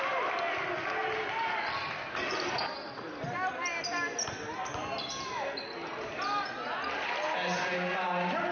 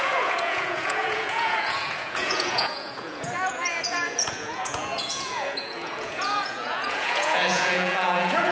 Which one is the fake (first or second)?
second